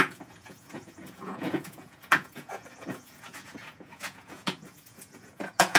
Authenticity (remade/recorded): remade